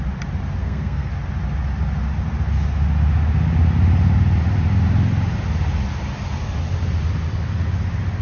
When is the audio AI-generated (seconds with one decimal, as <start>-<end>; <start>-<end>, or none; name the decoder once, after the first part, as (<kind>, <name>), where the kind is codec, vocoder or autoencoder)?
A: 0.6-1.1 (codec, SNAC)